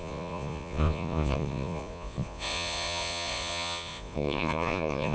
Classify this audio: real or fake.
fake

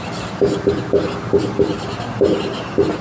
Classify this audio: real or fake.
real